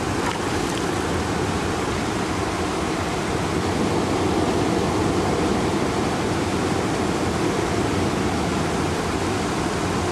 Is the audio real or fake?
real